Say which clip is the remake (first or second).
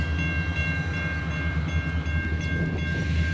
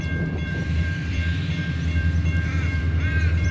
second